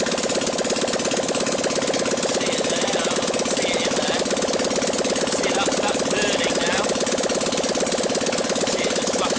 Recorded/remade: recorded